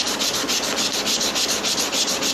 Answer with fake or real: real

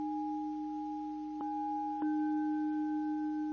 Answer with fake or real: real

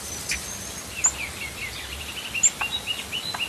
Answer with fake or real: real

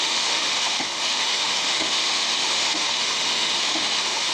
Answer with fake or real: fake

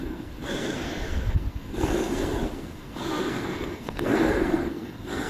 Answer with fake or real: fake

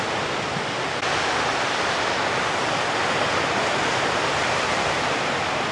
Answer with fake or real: real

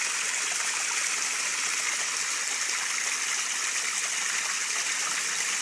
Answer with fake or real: real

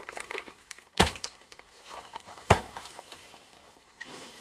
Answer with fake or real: fake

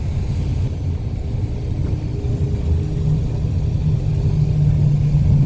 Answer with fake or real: real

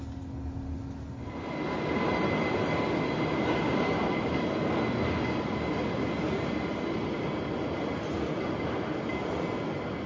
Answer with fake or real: real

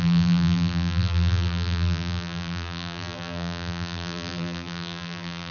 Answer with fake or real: fake